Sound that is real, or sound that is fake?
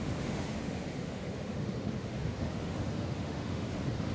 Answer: fake